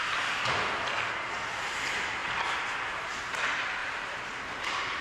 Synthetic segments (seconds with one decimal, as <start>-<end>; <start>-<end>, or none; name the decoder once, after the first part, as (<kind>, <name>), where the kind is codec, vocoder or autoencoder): 3.8-5.0 (vocoder, BigVGAN v2)